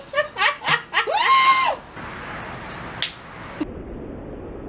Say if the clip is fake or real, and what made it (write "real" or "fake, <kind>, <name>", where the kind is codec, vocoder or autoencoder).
real